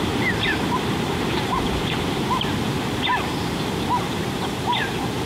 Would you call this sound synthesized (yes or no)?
yes